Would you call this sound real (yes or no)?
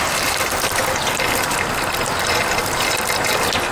yes